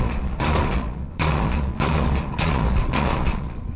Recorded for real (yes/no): no